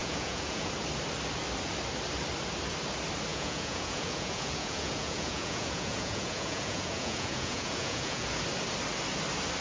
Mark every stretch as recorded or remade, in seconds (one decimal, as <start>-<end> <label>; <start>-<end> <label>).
0.0-0.7 remade; 0.7-3.3 recorded; 3.3-8.3 remade; 8.3-9.6 recorded